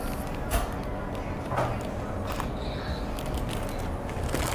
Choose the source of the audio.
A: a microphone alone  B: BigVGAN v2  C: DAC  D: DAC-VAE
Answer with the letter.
A